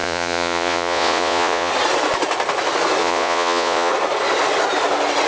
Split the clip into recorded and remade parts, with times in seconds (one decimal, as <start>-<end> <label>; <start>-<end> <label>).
0.0-1.7 remade; 1.7-3.0 recorded; 3.0-3.9 remade; 3.9-5.3 recorded